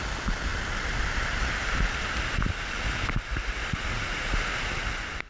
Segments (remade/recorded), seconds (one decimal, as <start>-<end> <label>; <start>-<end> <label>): 0.0-3.3 recorded; 3.3-4.3 remade; 4.3-5.3 recorded